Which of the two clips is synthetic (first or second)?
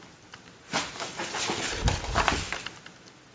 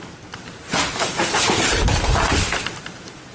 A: second